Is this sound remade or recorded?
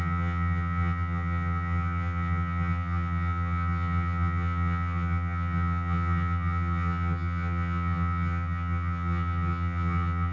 remade